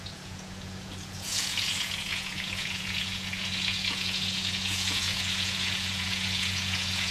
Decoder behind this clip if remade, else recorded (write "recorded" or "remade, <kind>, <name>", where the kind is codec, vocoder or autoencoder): remade, vocoder, Vocos